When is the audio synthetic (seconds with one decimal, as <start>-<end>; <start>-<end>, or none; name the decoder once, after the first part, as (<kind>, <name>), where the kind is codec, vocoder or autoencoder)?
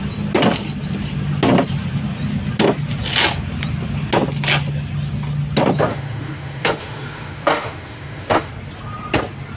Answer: 5.9-8.5 (autoencoder, DAC-VAE)